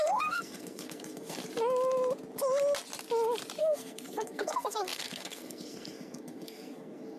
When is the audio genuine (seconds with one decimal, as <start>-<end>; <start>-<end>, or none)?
1.4-3.6